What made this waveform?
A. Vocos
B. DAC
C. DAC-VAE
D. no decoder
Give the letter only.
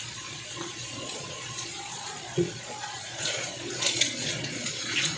A